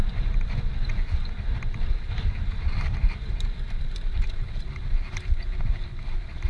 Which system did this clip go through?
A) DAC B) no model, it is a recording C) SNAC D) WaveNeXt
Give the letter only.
B